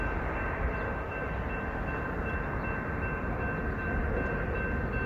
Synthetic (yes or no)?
no